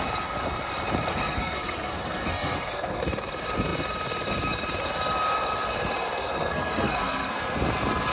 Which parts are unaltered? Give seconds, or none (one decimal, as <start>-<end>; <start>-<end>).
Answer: 0.0-1.1; 3.0-6.2; 7.4-8.1